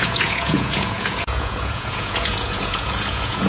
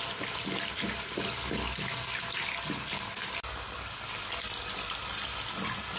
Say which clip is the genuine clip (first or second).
second